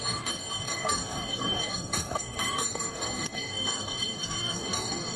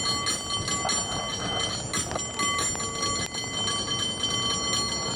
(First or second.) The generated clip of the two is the first